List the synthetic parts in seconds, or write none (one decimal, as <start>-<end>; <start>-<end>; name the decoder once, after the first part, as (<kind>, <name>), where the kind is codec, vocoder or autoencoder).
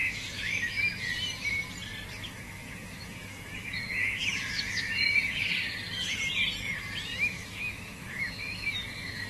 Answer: 0.0-0.8 (autoencoder, DAC-VAE); 2.1-5.5; 7.1-9.3